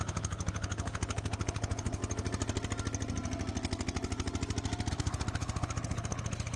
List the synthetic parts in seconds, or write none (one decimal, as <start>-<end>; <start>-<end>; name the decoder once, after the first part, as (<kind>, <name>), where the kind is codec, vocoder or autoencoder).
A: 0.0-2.0 (codec, HILCodec); 4.9-6.6